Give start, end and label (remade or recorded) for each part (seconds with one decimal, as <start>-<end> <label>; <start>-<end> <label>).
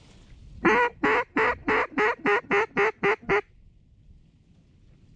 0.0-5.2 recorded